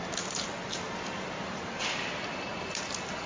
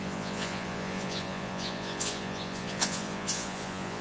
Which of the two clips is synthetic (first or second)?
second